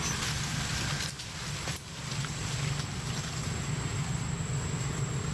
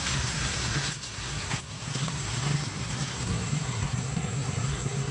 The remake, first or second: second